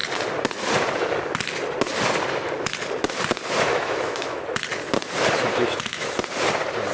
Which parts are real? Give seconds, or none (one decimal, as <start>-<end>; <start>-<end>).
0.0-3.7; 4.4-5.5; 6.2-6.9